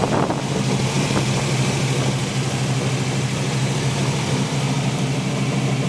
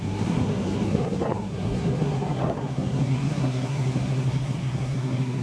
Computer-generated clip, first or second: second